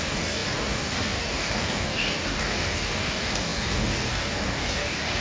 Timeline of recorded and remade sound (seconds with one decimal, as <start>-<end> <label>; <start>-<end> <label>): 0.0-5.2 remade